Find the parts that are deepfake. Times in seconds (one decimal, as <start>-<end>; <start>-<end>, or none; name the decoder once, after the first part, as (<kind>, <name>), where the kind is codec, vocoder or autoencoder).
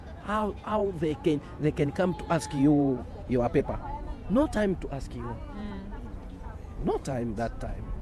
0.0-8.0 (vocoder, Vocos)